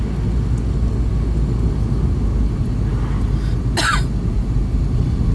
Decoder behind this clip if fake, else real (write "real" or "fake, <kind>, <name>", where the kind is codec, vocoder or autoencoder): real